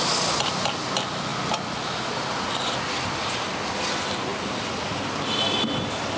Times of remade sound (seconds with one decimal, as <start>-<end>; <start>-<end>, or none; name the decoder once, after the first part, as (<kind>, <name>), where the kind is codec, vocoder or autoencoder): none